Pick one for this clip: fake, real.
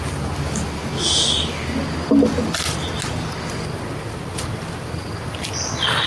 real